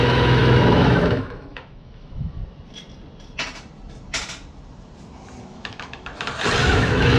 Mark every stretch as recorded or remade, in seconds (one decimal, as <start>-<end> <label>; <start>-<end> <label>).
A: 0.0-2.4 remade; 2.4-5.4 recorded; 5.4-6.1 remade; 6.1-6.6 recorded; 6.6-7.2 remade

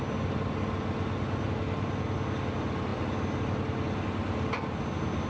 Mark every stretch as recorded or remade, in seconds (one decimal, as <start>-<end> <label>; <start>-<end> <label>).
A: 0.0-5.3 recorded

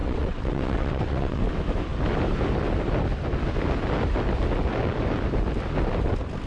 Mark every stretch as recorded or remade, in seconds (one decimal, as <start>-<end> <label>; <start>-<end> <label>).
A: 0.0-1.4 remade; 1.4-6.5 recorded

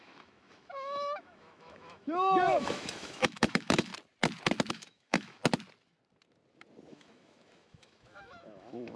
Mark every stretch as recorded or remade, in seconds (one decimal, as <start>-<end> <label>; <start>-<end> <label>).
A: 0.0-3.9 remade; 3.9-4.7 recorded; 4.7-5.4 remade; 5.4-6.9 recorded; 6.9-9.0 remade